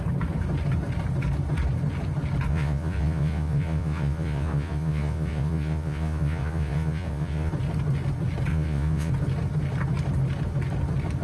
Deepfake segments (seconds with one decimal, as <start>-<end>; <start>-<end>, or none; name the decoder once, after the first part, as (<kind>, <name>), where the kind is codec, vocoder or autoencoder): 2.5-7.5 (vocoder, Vocos); 8.5-9.1